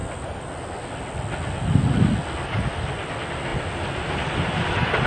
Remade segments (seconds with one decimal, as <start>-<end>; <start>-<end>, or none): none